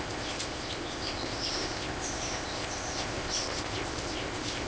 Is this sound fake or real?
fake